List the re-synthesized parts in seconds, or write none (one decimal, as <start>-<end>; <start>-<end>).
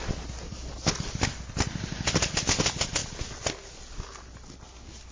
none